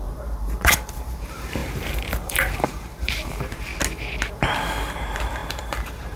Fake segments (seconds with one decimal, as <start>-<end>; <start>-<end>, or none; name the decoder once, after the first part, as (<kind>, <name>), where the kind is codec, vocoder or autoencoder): 0.0-3.7 (vocoder, BigVGAN v2); 4.3-6.2

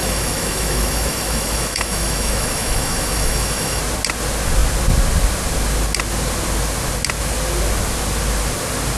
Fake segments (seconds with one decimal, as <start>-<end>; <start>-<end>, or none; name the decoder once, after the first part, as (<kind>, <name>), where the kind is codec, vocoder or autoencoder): 0.0-3.8 (autoencoder, DAC-VAE)

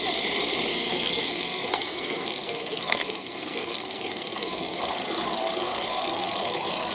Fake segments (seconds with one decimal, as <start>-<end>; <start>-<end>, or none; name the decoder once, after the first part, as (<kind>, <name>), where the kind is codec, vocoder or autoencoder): 0.7-4.8 (codec, SNAC); 5.6-6.9

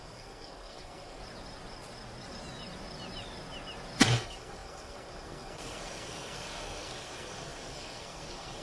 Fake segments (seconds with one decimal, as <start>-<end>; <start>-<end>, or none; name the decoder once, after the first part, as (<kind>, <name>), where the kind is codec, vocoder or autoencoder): 0.0-1.2 (codec, SNAC); 4.1-8.6

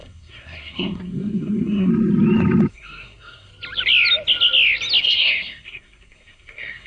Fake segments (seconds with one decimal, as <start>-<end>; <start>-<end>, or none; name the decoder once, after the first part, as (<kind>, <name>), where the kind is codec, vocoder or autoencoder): 0.0-1.9 (codec, SNAC); 2.7-3.5; 5.0-6.9